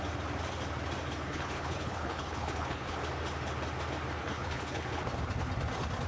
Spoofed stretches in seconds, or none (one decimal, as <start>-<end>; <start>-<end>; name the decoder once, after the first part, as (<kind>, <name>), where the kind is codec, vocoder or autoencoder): 1.3-3.0 (codec, HILCodec); 4.2-5.0